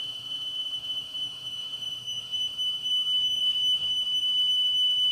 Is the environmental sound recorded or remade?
remade